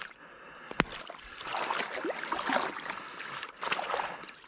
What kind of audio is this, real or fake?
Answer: real